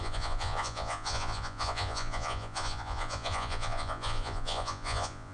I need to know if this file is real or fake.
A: fake